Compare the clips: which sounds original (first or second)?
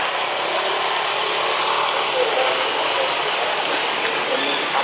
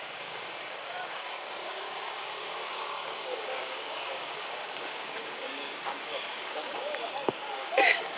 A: first